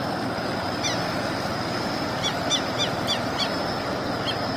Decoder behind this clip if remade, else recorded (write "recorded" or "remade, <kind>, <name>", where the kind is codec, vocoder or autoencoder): recorded